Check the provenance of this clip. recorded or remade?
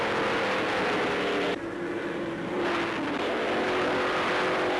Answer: recorded